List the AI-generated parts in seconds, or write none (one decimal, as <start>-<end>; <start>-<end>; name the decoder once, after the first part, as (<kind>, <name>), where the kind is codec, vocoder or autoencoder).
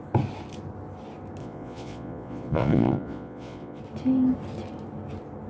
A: 1.4-3.8 (vocoder, Vocos)